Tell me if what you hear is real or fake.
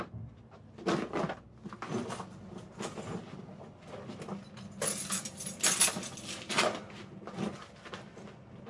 real